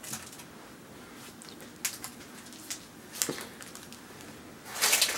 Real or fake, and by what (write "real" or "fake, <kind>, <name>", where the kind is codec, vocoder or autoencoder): real